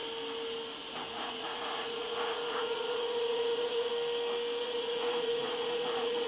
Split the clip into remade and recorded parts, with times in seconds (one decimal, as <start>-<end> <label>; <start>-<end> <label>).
0.0-1.1 recorded; 1.1-3.9 remade; 3.9-4.6 recorded; 4.6-6.3 remade